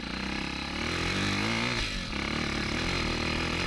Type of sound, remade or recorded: recorded